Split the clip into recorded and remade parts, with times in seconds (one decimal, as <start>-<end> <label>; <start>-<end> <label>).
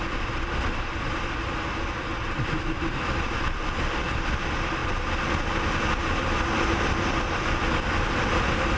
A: 0.0-4.8 remade; 4.8-6.2 recorded; 6.2-8.8 remade